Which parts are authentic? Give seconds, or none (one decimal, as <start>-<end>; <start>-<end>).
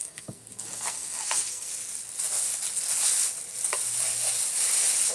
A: 1.7-5.1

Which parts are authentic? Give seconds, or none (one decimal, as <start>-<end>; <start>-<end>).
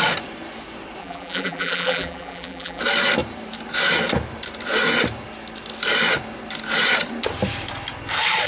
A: 0.0-1.0; 2.8-8.5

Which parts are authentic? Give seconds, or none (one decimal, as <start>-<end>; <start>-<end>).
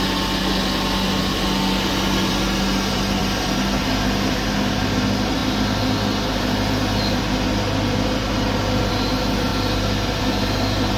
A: 0.0-11.0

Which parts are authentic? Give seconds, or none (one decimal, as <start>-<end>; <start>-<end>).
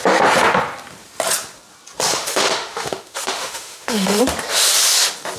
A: 0.0-2.1; 4.2-5.4